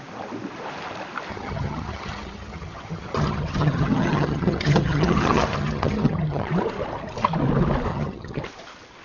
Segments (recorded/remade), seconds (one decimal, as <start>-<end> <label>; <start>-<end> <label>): 0.0-1.3 recorded; 1.3-6.5 remade; 6.5-7.9 recorded; 7.9-8.4 remade; 8.4-9.0 recorded